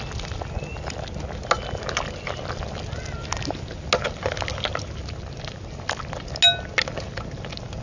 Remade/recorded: recorded